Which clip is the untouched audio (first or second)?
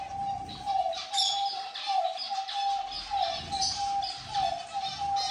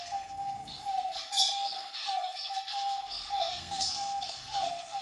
first